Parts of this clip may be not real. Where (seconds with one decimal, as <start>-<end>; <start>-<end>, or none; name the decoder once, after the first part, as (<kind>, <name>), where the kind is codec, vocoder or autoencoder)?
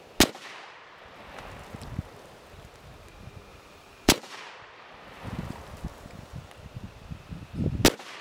3.5-4.5 (vocoder, BigVGAN v2); 5.9-6.5